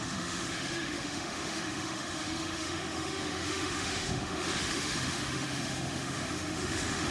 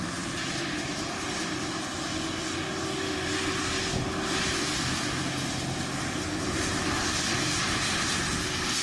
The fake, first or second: first